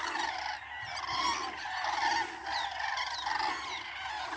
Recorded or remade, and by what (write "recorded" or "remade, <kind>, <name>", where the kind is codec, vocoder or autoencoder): recorded